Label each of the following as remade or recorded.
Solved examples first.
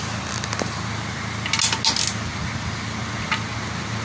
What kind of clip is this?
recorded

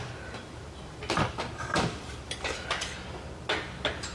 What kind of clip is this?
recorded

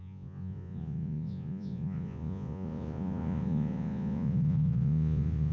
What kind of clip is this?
remade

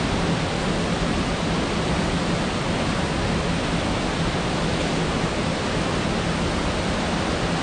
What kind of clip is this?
recorded